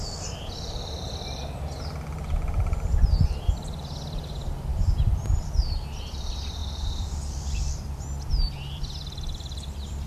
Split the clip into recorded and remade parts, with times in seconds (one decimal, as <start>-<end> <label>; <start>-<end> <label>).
0.0-10.1 remade